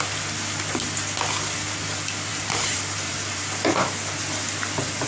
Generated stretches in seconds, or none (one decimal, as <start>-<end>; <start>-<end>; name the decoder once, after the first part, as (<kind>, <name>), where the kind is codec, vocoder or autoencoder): 2.3-3.4 (vocoder, BigVGAN v2)